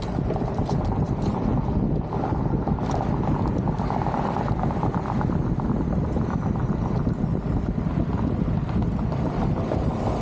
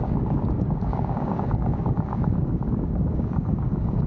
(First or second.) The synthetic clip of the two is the second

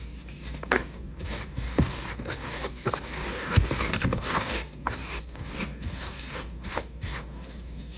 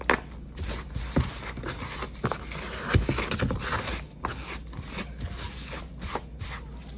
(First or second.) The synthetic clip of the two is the first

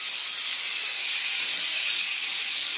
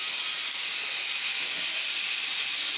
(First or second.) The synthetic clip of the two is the first